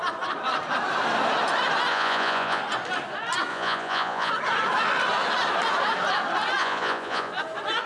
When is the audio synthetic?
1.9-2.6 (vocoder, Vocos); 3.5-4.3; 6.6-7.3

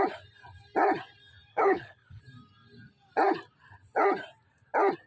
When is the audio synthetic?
1.5-2.2 (codec, HILCodec)